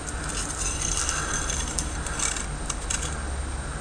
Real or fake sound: real